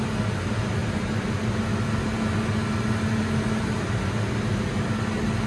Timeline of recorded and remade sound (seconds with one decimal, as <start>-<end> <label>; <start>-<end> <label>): 0.0-5.5 recorded

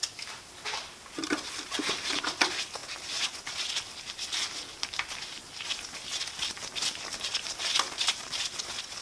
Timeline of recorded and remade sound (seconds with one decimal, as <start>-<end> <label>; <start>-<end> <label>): 0.0-1.2 recorded; 1.2-1.9 remade; 1.9-7.3 recorded; 7.3-8.4 remade; 8.4-9.0 recorded

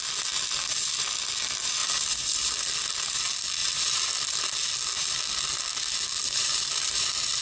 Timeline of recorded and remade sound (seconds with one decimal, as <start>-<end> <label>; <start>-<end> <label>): 0.0-1.8 recorded; 1.8-2.6 remade; 2.6-3.6 recorded; 3.6-4.4 remade; 4.4-6.2 recorded; 6.2-7.4 remade

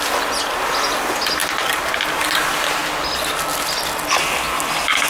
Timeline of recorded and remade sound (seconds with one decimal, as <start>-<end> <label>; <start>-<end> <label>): 0.0-5.1 recorded

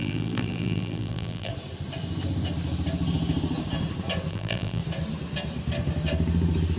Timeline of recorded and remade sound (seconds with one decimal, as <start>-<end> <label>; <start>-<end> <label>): 0.0-1.5 remade; 1.5-4.3 recorded; 4.3-4.8 remade; 4.8-6.8 recorded

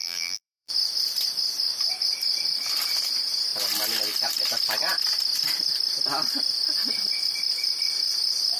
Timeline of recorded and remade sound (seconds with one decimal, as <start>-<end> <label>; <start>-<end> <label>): 0.0-0.7 remade; 0.7-8.6 recorded

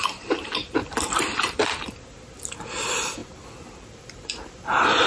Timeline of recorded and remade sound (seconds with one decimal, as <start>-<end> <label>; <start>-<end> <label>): 0.0-0.8 recorded; 0.8-1.6 remade; 1.6-3.2 recorded; 3.2-5.1 remade